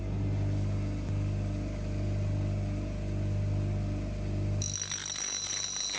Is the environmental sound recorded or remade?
recorded